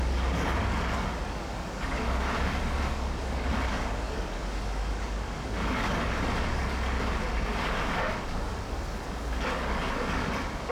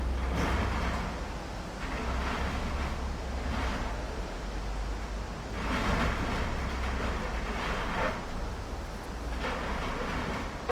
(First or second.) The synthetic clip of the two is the first